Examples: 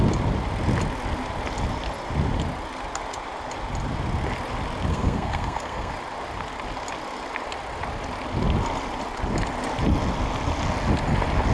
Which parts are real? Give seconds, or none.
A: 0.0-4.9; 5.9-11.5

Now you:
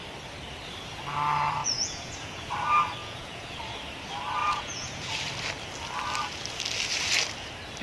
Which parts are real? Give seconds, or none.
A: 0.0-1.6; 2.5-3.0; 3.6-4.4; 5.1-7.8